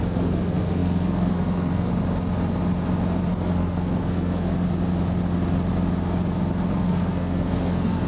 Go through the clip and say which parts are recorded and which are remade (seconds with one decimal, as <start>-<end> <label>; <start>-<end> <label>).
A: 0.0-1.9 remade; 1.9-3.3 recorded; 3.3-4.5 remade; 4.5-6.7 recorded; 6.7-8.1 remade